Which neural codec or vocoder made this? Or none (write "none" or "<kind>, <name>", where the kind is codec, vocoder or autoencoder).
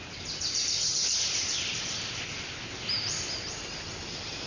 none